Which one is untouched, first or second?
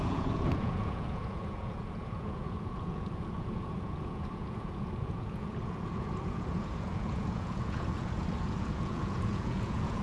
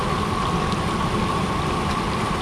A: second